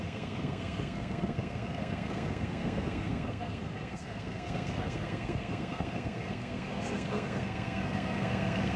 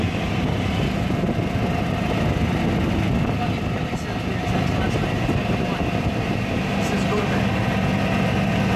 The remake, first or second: first